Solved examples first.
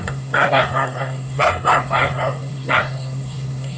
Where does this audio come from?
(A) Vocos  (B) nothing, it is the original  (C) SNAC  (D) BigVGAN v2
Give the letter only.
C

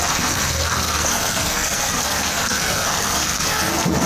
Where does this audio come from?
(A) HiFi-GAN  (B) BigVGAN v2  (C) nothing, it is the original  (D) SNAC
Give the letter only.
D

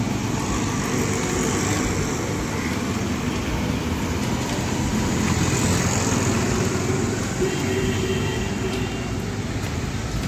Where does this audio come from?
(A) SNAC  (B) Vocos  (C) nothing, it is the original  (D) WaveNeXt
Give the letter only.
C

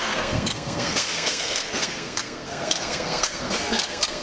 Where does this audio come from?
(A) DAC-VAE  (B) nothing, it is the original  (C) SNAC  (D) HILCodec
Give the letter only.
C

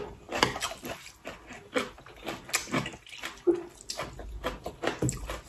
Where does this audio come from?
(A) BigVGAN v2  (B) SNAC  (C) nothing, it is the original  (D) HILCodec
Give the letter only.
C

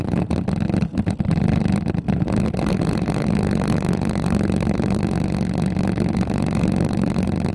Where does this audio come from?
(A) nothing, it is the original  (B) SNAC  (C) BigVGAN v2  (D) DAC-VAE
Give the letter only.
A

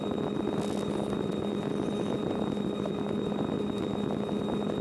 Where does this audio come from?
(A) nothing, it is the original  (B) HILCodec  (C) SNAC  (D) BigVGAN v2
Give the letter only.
A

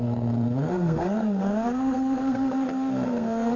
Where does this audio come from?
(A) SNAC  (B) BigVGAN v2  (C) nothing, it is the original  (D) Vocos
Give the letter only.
A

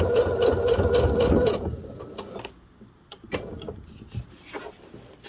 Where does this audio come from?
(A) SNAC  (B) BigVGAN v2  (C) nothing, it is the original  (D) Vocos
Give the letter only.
C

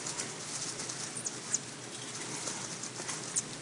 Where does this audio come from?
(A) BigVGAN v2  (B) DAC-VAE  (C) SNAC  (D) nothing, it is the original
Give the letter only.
D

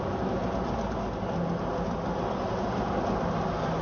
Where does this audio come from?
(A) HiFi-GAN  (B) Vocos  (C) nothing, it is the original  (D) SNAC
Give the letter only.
C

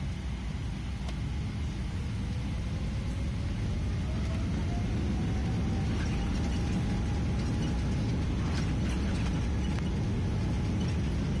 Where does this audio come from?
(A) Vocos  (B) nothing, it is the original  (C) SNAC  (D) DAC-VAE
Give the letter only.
B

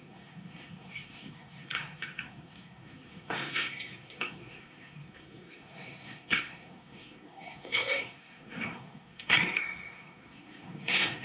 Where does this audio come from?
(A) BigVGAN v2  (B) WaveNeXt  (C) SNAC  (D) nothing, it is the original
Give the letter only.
C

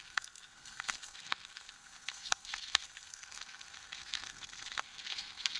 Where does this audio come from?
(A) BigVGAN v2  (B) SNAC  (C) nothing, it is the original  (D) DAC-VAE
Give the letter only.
B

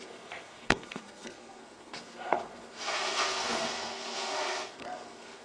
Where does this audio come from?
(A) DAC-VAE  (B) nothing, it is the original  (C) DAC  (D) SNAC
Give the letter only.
D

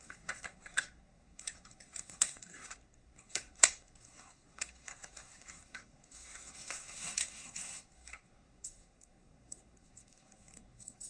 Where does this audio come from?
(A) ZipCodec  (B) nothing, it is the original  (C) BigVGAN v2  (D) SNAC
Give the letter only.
D